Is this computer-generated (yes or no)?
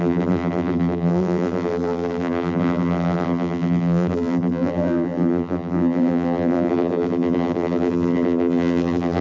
yes